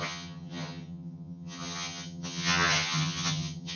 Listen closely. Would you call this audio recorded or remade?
remade